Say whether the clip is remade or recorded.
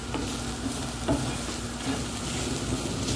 recorded